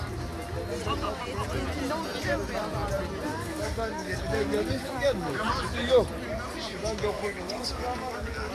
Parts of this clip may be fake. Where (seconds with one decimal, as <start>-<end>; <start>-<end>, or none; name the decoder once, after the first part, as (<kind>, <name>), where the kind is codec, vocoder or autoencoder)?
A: 3.3-5.9 (codec, DAC); 6.7-8.5